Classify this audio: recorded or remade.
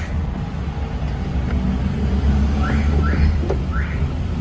recorded